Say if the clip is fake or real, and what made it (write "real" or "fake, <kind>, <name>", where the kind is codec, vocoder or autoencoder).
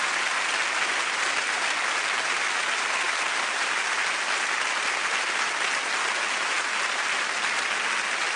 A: real